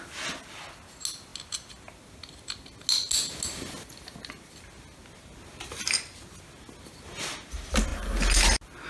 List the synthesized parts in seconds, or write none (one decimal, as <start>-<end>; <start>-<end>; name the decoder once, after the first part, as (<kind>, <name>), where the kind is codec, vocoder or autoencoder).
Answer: none